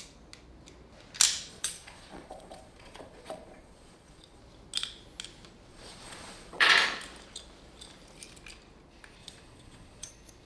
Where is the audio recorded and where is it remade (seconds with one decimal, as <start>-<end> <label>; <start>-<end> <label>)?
0.0-1.5 recorded; 1.5-4.4 remade; 4.4-5.7 recorded; 5.7-6.7 remade; 6.7-9.2 recorded; 9.2-10.1 remade; 10.1-10.5 recorded